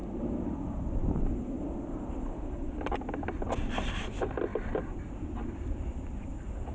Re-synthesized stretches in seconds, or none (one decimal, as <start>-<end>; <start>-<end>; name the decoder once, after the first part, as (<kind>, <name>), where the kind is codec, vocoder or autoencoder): 4.5-6.1 (vocoder, BigVGAN v2)